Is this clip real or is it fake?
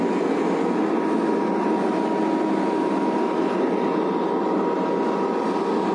real